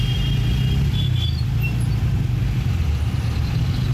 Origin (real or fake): real